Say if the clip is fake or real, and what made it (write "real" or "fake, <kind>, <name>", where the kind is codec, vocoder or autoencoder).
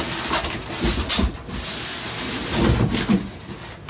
real